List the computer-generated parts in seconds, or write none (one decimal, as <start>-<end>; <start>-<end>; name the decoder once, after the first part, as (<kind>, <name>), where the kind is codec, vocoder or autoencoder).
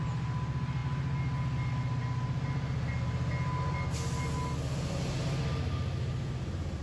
none